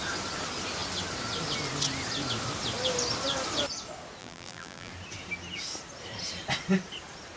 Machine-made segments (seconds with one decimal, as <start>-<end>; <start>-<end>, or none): 4.2-4.9